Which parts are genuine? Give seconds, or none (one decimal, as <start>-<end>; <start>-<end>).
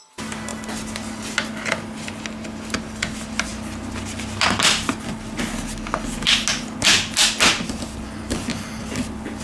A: 0.0-9.4